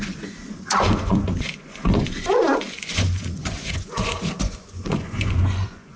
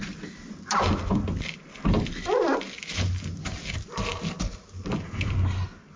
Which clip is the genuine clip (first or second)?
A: second